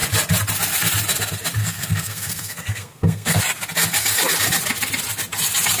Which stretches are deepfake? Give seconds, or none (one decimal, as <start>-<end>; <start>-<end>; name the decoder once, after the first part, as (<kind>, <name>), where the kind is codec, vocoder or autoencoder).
1.6-3.4 (codec, SNAC)